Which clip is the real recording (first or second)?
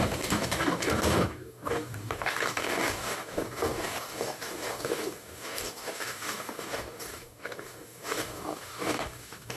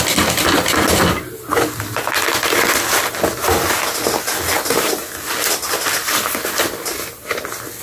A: second